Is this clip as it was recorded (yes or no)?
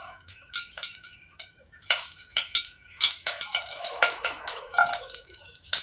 no